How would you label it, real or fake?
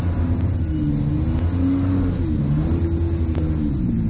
real